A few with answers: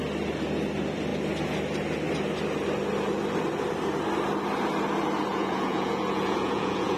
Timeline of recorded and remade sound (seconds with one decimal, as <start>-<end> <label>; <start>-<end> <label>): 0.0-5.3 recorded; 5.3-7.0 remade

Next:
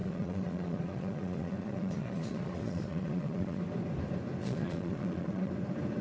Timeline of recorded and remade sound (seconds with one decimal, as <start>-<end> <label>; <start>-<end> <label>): 0.0-3.6 remade; 3.6-4.4 recorded; 4.4-5.5 remade; 5.5-6.0 recorded

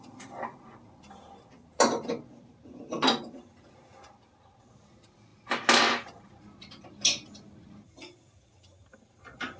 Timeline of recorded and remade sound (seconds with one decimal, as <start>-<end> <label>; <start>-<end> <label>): 0.0-9.6 recorded

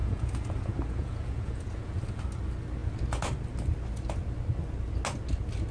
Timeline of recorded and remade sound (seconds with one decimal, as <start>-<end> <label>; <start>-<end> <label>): 0.0-2.2 remade; 2.2-5.7 recorded

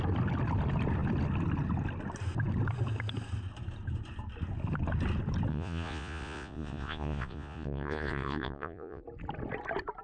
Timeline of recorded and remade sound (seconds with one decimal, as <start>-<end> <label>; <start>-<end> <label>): 0.0-5.5 recorded; 5.5-9.0 remade; 9.0-10.0 recorded

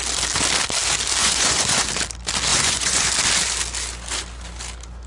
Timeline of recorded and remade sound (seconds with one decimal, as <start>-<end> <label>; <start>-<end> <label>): 0.0-1.2 recorded; 1.2-1.9 remade; 1.9-2.5 recorded; 2.5-3.1 remade; 3.1-5.1 recorded

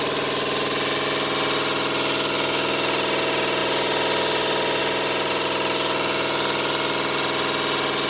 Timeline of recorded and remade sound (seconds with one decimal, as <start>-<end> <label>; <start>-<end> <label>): 0.0-8.1 recorded

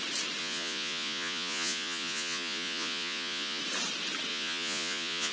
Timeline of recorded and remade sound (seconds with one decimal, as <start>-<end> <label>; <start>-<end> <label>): 0.0-0.4 recorded; 0.4-3.6 remade; 3.6-4.3 recorded; 4.3-5.3 remade